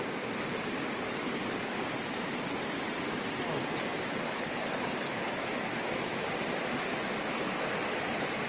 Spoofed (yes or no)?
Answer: no